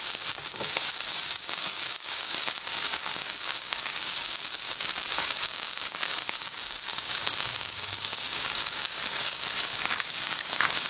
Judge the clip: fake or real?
fake